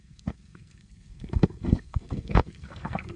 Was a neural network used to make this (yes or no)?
yes